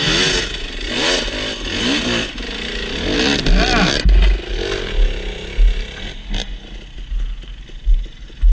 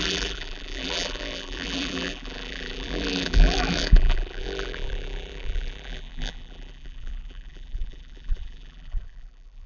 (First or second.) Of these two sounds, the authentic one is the first